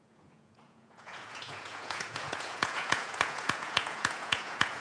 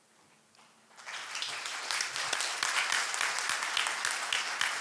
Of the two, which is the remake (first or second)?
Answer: first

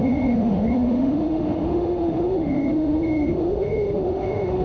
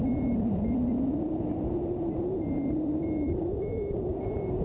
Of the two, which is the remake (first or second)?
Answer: first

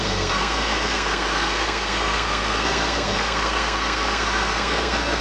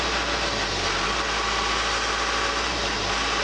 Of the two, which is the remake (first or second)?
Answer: first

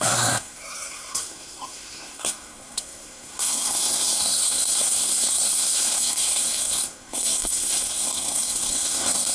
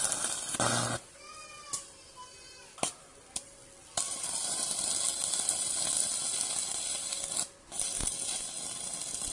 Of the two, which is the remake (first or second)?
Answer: first